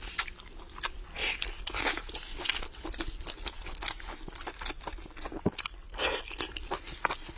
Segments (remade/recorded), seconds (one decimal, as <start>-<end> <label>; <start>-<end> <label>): 0.0-7.4 recorded